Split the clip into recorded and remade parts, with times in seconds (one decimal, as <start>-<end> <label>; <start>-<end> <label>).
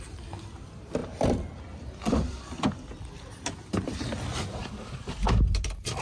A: 0.0-4.6 recorded; 4.6-5.4 remade; 5.4-6.0 recorded